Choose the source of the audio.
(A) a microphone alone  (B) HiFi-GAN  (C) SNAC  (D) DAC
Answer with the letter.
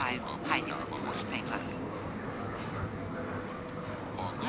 A